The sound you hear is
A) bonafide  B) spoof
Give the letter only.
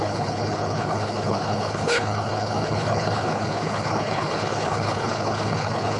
B